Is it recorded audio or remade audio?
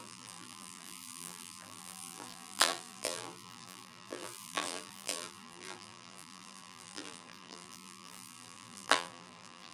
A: remade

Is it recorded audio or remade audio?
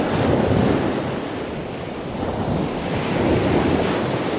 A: recorded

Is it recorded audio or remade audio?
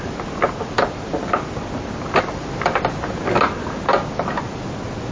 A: recorded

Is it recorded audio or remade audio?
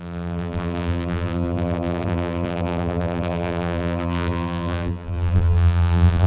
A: remade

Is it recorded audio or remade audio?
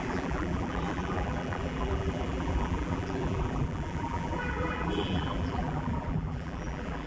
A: remade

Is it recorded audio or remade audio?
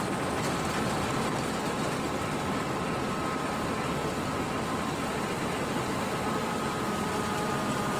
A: recorded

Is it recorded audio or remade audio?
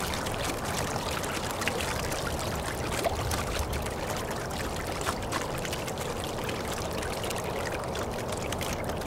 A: recorded